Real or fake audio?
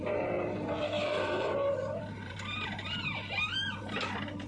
real